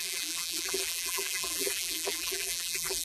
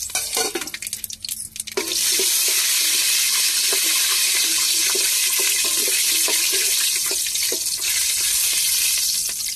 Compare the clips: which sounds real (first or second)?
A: second